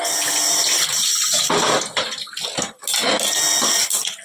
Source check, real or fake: real